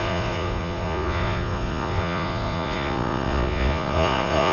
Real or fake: fake